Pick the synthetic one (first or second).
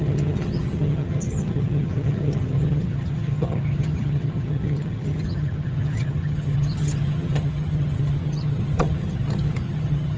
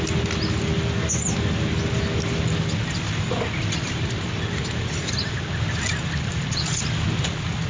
first